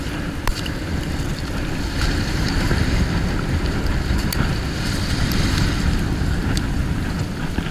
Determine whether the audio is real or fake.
fake